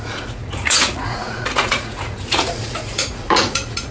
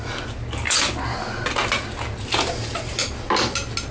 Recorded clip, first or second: second